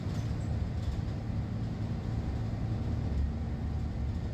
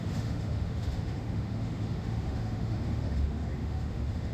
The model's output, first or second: second